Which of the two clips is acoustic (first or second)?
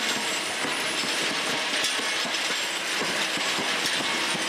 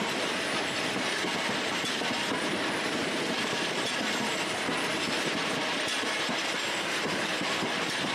first